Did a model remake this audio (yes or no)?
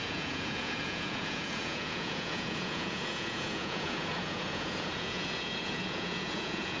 yes